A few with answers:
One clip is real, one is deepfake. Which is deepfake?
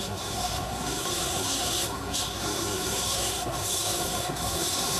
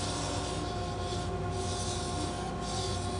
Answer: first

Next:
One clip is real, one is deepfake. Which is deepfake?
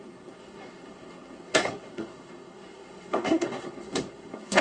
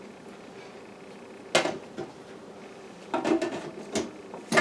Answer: first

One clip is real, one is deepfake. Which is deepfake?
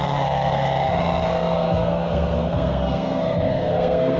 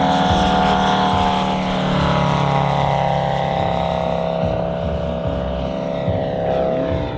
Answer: first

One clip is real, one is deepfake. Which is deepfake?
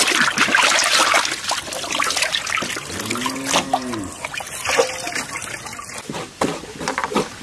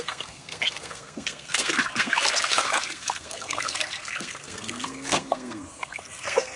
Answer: second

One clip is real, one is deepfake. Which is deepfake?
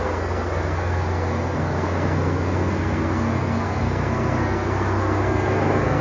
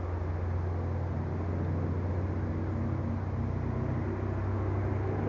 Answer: first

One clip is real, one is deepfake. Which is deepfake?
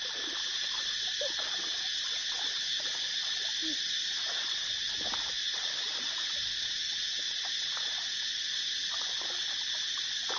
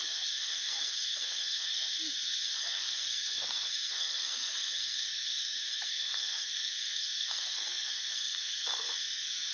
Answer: second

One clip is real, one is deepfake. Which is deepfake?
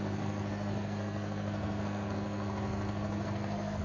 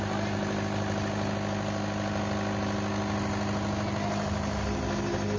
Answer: first